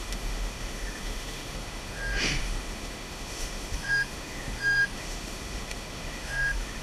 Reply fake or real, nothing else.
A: fake